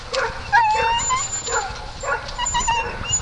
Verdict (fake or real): real